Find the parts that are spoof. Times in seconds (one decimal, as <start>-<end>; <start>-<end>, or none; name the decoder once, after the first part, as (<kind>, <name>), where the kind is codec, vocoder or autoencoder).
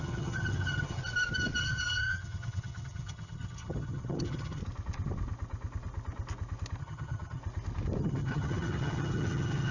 0.0-1.0 (vocoder, HiFi-GAN); 1.6-4.6; 6.8-7.4; 8.0-9.7